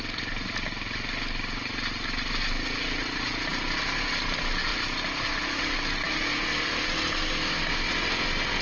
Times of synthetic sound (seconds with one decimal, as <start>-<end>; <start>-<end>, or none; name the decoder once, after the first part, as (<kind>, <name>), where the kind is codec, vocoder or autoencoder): none